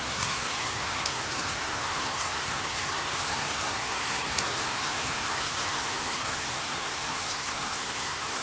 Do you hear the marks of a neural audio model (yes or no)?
yes